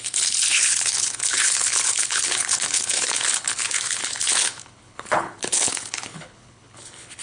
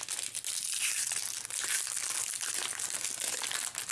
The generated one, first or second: first